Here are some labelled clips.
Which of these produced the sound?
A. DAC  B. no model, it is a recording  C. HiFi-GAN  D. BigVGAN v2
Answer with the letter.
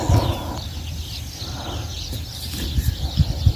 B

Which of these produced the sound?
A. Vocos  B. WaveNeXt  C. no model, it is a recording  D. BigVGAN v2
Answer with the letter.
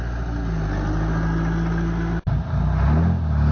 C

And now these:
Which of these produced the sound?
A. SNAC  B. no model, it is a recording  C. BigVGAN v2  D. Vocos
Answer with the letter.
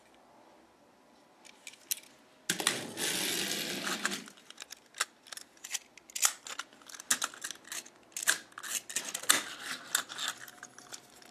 B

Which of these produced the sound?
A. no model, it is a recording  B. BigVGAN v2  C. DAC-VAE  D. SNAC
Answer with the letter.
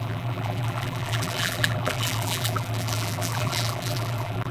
B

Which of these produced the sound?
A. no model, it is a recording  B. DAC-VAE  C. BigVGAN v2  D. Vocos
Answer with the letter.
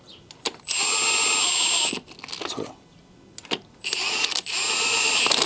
A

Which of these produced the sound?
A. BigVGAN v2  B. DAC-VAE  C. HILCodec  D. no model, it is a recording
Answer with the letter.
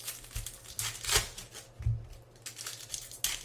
D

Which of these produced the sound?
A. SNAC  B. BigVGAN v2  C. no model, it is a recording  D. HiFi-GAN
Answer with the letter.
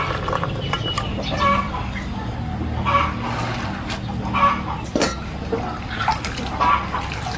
C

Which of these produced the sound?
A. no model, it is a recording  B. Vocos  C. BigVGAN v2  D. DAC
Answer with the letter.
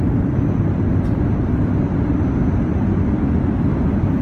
A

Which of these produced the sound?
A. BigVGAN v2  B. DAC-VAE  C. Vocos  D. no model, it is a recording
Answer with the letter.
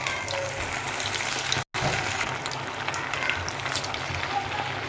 D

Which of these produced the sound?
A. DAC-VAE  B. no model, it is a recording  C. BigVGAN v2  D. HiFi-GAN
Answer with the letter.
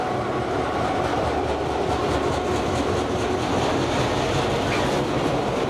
B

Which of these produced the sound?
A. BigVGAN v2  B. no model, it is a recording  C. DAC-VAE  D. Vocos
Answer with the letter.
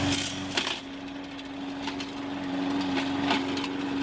B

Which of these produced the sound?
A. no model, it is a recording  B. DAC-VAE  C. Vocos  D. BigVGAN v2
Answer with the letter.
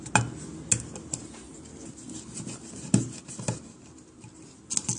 A